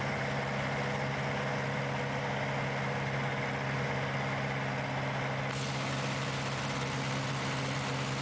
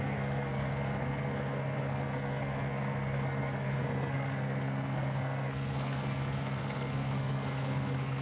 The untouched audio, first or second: first